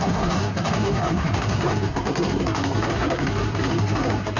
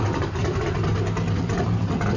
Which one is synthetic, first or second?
first